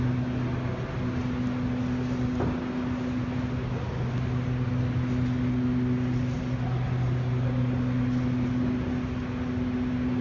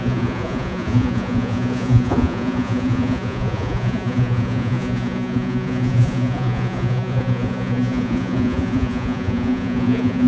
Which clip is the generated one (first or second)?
second